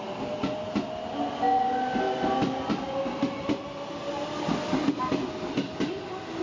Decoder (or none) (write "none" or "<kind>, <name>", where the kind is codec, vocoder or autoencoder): none